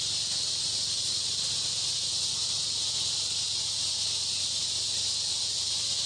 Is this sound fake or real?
real